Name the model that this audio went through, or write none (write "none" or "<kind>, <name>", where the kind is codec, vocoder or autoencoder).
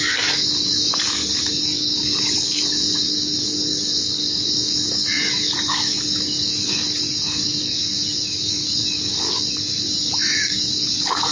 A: codec, DAC